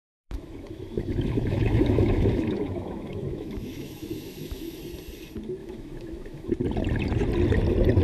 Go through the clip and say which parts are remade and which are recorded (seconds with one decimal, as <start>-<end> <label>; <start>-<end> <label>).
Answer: 0.0-4.8 remade; 4.8-5.6 recorded; 5.6-6.5 remade; 6.5-8.0 recorded